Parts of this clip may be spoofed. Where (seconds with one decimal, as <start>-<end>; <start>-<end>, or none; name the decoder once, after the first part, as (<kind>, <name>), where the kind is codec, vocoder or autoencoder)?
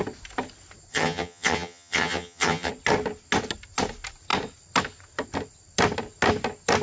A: 0.9-2.7 (vocoder, HiFi-GAN)